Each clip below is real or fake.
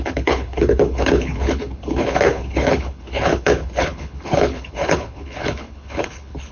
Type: fake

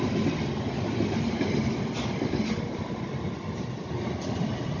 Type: real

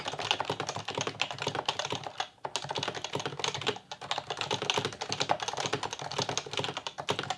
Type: real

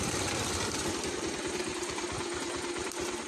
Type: real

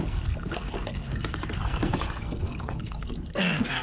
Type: fake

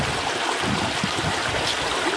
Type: real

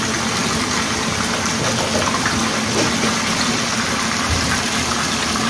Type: real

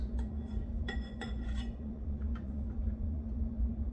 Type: fake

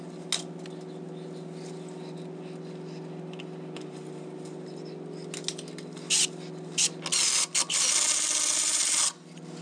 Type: real